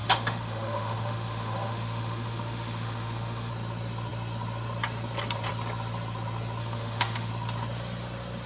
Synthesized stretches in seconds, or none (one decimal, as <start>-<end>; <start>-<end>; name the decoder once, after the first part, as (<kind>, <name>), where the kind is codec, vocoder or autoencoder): 0.0-3.5 (autoencoder, DAC-VAE); 6.6-7.3